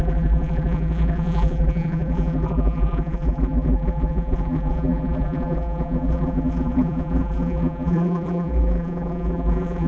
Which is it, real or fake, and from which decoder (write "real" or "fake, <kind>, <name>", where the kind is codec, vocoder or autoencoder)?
fake, vocoder, BigVGAN v2